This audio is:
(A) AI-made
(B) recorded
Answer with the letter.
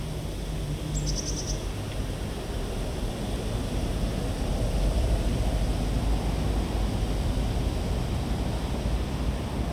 B